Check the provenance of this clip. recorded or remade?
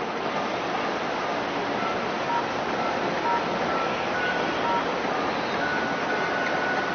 recorded